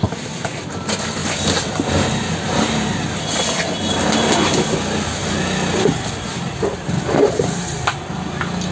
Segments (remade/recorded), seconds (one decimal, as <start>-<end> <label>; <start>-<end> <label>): 0.0-8.7 recorded